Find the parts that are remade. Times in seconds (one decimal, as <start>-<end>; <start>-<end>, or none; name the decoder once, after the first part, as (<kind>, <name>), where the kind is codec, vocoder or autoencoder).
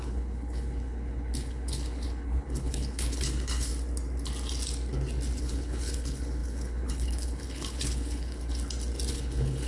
0.0-3.7 (codec, HILCodec); 5.4-8.4; 9.1-9.7